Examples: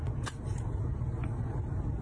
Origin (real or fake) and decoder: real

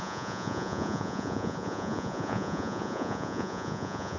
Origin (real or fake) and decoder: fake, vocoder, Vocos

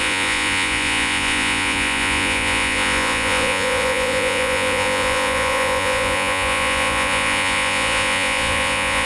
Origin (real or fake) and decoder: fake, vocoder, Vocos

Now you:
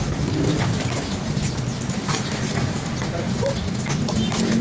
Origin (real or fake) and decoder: real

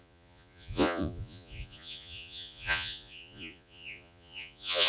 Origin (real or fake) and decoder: fake, vocoder, Vocos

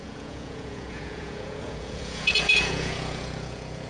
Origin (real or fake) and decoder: fake, vocoder, Vocos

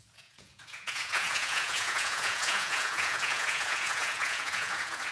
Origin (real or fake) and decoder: fake, vocoder, Vocos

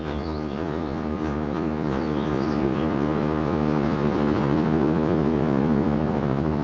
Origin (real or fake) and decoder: fake, vocoder, Vocos